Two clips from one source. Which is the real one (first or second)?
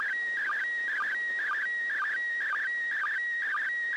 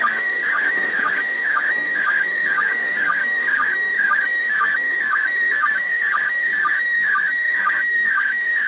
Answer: first